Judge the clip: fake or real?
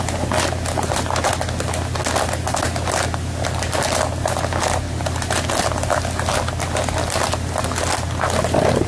real